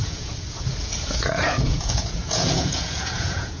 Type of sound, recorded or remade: remade